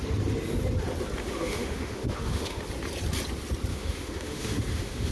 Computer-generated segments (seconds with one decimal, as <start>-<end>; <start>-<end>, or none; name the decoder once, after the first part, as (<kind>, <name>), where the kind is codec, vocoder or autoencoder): 1.2-2.6 (autoencoder, DAC-VAE); 3.7-5.1